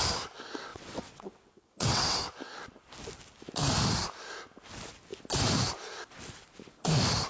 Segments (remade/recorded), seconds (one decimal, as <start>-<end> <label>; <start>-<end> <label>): 0.0-0.7 recorded; 0.7-2.2 remade; 2.2-7.3 recorded